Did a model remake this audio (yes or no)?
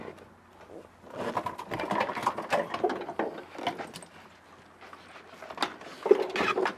no